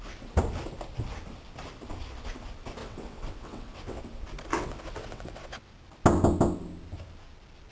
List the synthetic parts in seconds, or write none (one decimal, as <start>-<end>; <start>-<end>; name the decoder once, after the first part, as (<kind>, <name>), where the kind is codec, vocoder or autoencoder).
2.8-4.0 (vocoder, WaveNeXt); 4.5-5.7